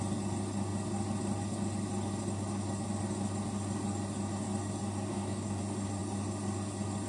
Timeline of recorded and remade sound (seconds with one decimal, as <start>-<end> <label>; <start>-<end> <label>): 0.0-5.1 recorded; 5.1-5.6 remade; 5.6-7.1 recorded